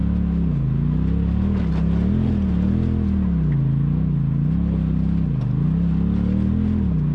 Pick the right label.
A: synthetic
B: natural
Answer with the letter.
B